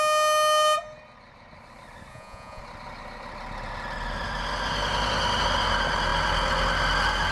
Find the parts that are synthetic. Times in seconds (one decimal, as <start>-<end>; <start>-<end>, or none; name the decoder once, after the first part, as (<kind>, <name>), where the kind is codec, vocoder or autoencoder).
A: 2.1-2.6 (vocoder, Vocos)